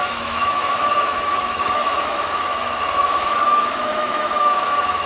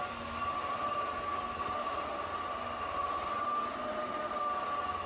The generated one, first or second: first